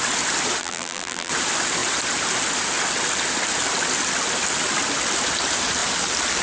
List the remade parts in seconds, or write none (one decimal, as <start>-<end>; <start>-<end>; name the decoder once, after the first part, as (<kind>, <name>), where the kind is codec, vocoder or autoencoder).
0.6-1.3 (vocoder, BigVGAN v2)